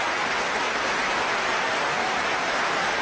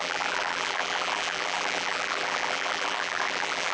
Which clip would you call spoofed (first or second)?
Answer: second